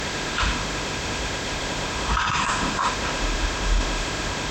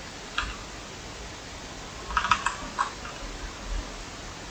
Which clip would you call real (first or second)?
second